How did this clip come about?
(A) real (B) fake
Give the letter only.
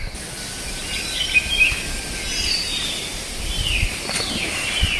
A